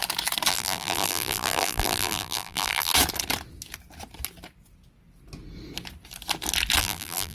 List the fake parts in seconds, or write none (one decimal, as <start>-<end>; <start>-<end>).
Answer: 0.5-2.9; 6.8-7.3